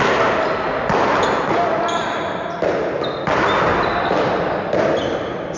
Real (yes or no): yes